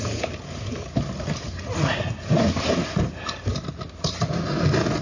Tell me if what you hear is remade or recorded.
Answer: recorded